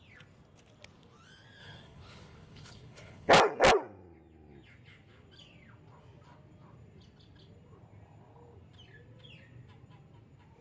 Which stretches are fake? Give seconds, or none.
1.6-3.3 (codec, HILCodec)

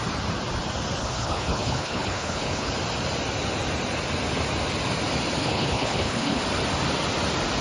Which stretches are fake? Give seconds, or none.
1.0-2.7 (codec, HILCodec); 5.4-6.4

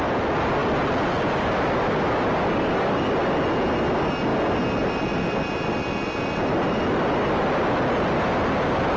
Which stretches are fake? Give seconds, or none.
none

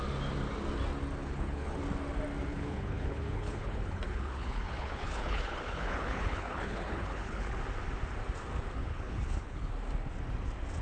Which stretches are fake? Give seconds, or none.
1.2-1.8 (codec, HILCodec); 2.5-7.6; 8.8-9.7

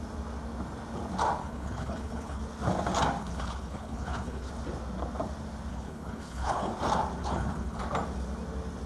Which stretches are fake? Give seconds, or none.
1.4-2.4 (codec, HILCodec); 3.2-4.5; 5.7-6.7; 7.2-7.8

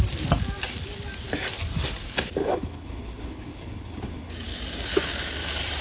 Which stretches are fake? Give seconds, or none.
2.4-4.3 (codec, HILCodec)

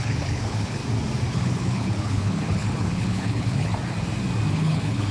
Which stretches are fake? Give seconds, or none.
0.0-0.8 (codec, HILCodec); 1.3-3.7; 4.5-5.1

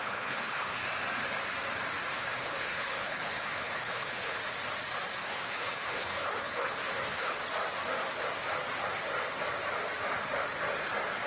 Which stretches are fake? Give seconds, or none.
0.0-0.8 (codec, HILCodec); 2.1-4.4; 5.2-7.4